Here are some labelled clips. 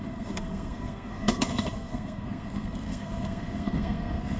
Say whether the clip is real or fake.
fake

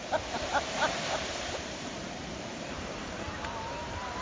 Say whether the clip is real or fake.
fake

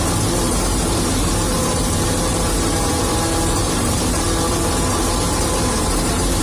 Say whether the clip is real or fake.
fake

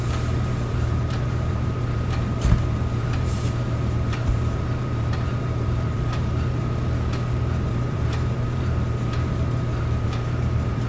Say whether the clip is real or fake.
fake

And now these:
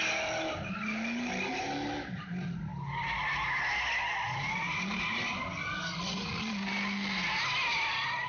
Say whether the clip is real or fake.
real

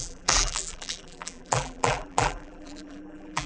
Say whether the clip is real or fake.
fake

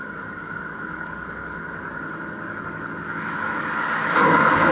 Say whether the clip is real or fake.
fake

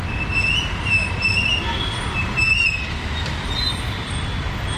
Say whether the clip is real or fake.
real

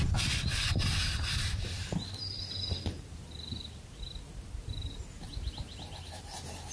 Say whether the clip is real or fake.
real